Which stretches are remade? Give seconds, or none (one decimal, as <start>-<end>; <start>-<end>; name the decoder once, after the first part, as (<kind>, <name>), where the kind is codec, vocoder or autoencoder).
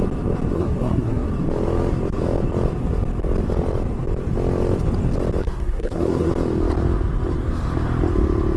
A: 0.5-1.3 (codec, SNAC); 5.4-6.3